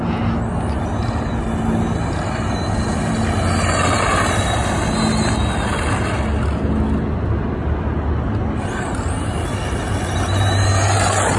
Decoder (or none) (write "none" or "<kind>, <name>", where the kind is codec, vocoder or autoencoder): none